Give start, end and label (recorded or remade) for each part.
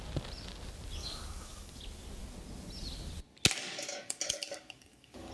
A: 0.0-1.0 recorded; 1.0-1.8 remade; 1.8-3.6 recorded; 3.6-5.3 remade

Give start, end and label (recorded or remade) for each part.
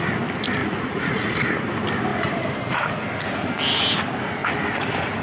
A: 0.0-0.6 recorded; 0.6-1.5 remade; 1.5-4.4 recorded; 4.4-5.2 remade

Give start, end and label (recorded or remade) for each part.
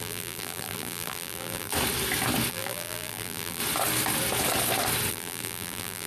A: 0.0-1.7 remade; 1.7-2.5 recorded; 2.5-3.6 remade; 3.6-5.1 recorded; 5.1-6.1 remade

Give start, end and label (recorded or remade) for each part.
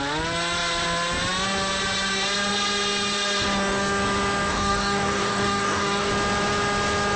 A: 0.0-4.5 recorded; 4.5-6.1 remade; 6.1-7.2 recorded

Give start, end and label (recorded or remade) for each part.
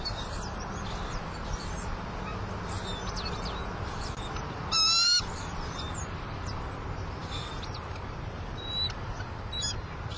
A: 0.0-10.2 recorded